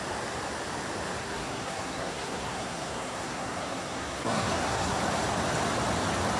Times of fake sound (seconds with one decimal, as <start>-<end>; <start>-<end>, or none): 1.2-5.0